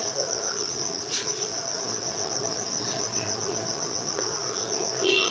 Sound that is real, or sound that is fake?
fake